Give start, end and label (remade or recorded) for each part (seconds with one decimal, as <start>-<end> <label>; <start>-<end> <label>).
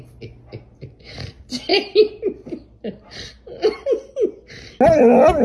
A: 0.0-1.7 recorded; 1.7-4.5 remade; 4.5-5.4 recorded